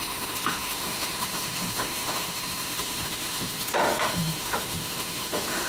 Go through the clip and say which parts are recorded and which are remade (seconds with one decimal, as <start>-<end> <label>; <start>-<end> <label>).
0.0-5.7 remade